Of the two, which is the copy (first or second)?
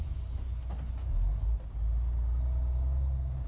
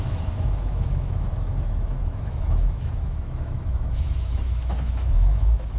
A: second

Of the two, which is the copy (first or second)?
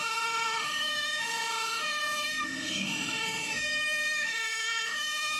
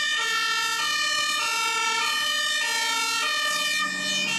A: first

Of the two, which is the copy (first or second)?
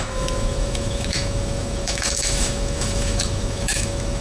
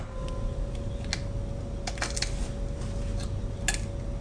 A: first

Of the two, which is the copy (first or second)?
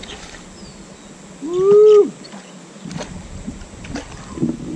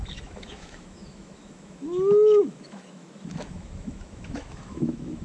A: second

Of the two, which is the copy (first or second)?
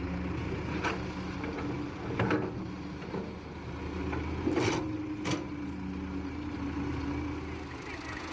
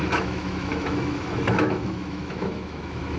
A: second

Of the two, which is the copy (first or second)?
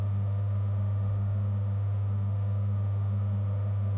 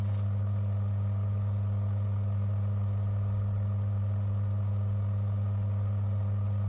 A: first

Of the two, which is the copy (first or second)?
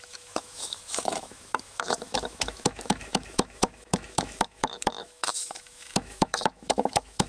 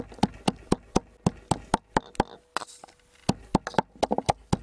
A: first